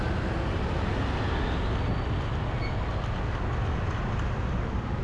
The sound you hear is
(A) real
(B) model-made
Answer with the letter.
A